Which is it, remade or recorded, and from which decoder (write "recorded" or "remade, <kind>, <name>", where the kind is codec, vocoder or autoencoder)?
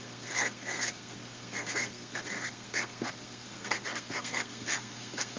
remade, codec, SNAC